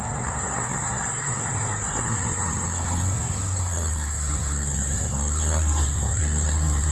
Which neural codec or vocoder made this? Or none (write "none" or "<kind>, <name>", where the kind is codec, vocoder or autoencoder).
codec, SNAC